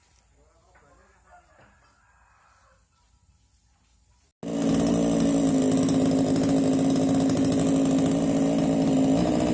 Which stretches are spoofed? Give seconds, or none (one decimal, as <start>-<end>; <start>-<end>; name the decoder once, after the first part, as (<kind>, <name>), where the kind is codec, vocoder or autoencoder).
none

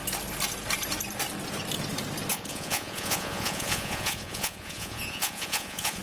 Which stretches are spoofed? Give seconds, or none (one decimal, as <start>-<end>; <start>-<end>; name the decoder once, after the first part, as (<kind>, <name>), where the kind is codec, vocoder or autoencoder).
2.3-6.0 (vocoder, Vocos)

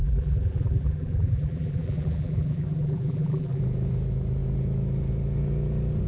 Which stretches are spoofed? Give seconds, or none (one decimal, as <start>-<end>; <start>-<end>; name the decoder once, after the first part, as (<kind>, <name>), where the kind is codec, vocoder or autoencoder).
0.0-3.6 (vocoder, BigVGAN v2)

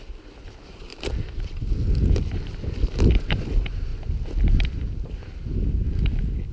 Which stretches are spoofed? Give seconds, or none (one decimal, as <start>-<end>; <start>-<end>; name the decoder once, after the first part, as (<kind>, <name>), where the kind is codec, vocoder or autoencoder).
none